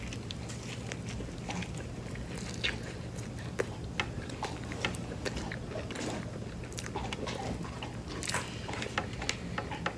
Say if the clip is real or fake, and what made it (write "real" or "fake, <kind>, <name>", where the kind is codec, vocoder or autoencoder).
real